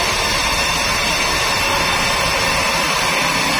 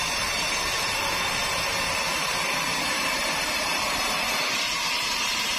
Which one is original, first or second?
first